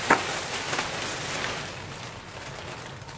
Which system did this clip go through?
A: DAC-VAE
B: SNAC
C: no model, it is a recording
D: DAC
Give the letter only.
C